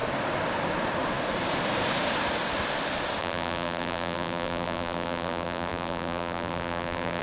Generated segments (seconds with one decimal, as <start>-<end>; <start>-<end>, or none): 3.2-7.2